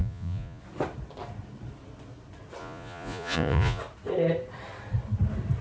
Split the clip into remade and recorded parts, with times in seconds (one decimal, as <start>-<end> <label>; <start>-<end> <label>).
0.0-0.6 remade; 0.6-2.6 recorded; 2.6-3.8 remade; 3.8-5.6 recorded